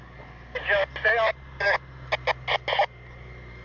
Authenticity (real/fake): real